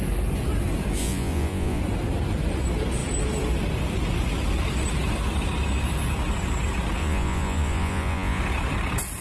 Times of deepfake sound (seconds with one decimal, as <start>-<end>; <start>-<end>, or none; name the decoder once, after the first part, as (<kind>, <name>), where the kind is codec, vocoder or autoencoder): 1.0-1.8 (vocoder, Vocos); 7.0-8.4